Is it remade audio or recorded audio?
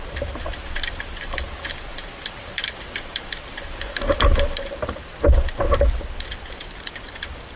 remade